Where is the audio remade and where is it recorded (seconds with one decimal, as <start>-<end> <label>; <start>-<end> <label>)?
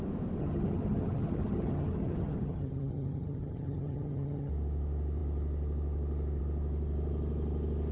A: 0.0-0.4 recorded; 0.4-4.5 remade; 4.5-7.9 recorded